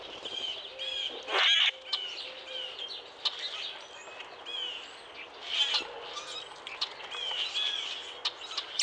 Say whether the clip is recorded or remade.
recorded